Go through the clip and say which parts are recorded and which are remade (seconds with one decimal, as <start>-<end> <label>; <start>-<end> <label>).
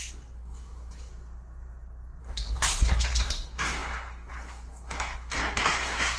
0.0-1.1 remade; 1.1-2.2 recorded; 2.2-6.2 remade